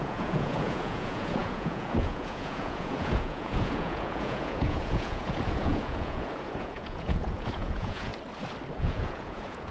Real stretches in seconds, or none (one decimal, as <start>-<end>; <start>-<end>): 8.1-8.7